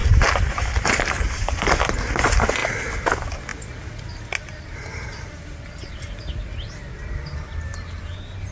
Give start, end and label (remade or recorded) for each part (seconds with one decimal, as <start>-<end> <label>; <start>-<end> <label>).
0.0-1.8 remade; 1.8-8.5 recorded